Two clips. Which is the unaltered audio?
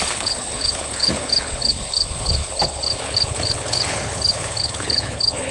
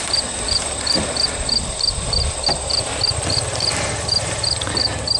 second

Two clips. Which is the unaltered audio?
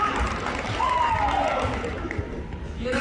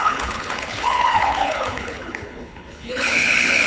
first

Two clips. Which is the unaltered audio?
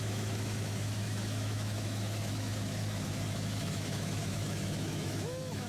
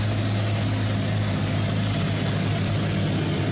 second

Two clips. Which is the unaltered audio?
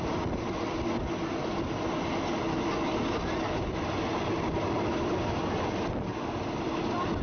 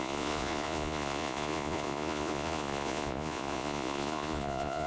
first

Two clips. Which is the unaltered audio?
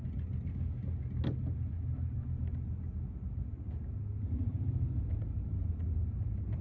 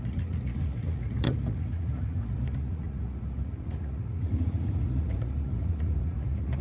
first